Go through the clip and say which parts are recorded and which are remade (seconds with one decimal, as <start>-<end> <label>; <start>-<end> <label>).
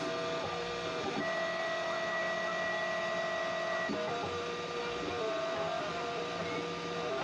0.0-7.2 recorded